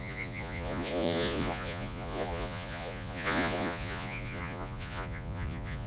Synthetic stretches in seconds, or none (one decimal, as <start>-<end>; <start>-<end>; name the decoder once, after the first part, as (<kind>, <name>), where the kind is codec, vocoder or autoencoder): 0.0-5.9 (vocoder, Vocos)